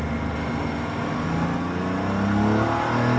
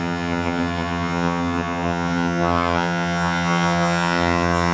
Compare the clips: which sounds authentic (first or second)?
first